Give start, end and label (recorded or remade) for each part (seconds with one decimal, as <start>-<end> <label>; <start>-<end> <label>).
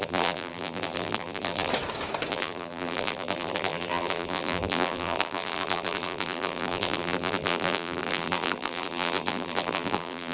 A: 0.0-1.7 remade; 1.7-2.3 recorded; 2.3-10.3 remade